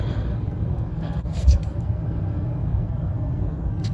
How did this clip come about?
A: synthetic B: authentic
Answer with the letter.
A